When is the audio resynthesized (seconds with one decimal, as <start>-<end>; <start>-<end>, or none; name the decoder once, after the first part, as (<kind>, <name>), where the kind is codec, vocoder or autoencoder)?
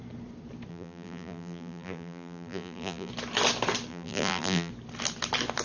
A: 0.7-3.1 (vocoder, BigVGAN v2); 3.9-4.7